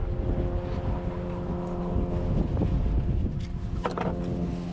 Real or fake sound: real